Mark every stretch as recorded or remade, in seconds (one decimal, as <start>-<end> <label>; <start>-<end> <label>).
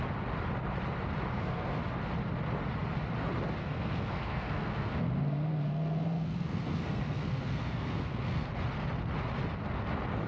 0.0-1.3 recorded; 1.3-1.8 remade; 1.8-3.6 recorded; 3.6-8.5 remade; 8.5-10.3 recorded